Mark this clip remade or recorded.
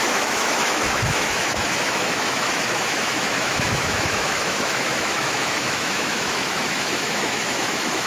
remade